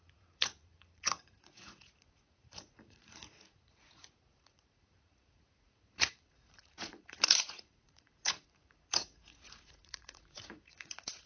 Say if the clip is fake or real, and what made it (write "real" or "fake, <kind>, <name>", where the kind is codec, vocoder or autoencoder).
fake, vocoder, Vocos